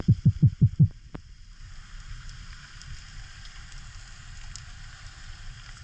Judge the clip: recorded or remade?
recorded